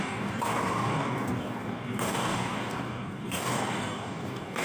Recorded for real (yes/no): no